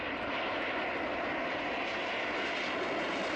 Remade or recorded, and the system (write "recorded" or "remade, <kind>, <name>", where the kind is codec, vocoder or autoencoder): recorded